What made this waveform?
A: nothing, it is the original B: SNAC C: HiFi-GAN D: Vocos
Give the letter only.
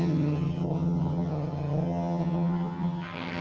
C